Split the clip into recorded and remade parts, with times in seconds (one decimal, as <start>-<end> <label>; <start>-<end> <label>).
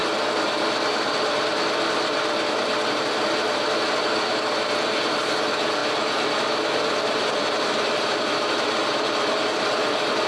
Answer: 0.0-1.4 remade; 1.4-5.8 recorded; 5.8-8.2 remade; 8.2-10.3 recorded